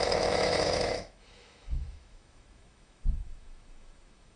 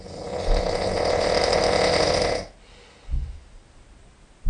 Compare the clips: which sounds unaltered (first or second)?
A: second